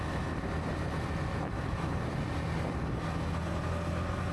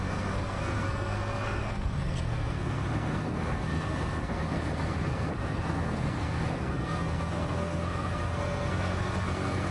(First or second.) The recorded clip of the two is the first